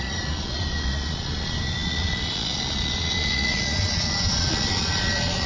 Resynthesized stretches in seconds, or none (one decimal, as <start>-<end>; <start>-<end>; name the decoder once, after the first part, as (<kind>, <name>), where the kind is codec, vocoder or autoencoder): 0.0-5.5 (vocoder, Vocos)